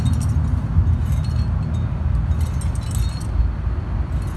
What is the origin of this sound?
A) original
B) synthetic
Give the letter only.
A